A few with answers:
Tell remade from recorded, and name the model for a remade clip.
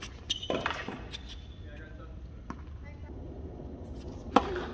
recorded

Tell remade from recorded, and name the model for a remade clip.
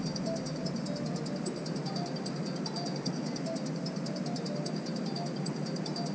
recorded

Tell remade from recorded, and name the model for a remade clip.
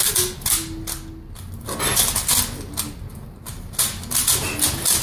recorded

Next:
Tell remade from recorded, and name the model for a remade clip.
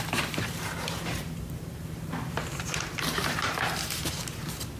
remade, vocoder, BigVGAN v2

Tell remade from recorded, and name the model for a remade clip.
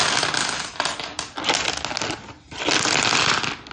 recorded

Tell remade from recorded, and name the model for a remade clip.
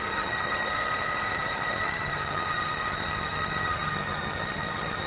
remade, vocoder, HiFi-GAN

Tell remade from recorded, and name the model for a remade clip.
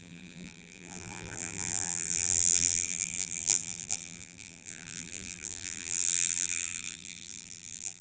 remade, vocoder, BigVGAN v2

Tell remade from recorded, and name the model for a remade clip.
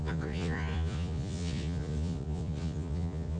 remade, vocoder, Vocos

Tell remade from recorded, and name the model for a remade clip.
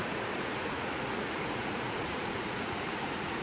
remade, vocoder, Vocos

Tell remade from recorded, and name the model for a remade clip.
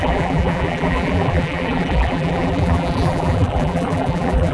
remade, vocoder, BigVGAN v2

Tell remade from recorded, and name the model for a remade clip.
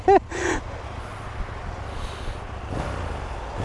recorded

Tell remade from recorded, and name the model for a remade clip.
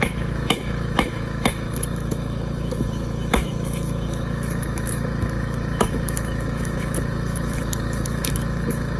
remade, autoencoder, DAC-VAE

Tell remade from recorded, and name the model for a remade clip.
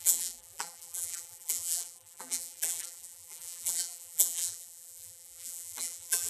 remade, vocoder, BigVGAN v2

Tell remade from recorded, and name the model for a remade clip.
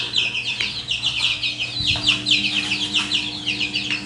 recorded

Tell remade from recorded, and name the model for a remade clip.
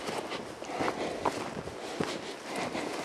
recorded